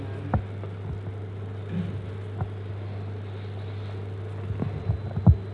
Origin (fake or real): real